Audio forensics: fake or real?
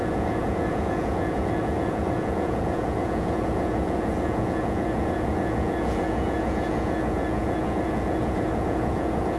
fake